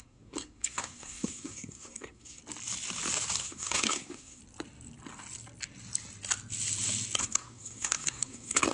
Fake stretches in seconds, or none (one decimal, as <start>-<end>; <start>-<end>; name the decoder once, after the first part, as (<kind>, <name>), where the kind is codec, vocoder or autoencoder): 0.0-2.4 (codec, SNAC); 3.4-4.4; 7.2-8.7